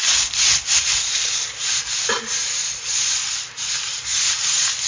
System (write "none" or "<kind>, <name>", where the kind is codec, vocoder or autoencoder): none